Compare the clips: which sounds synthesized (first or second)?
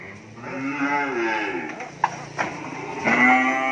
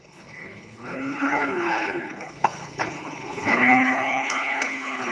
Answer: second